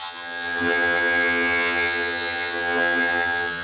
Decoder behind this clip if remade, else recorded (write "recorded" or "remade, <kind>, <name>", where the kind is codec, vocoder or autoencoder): remade, vocoder, HiFi-GAN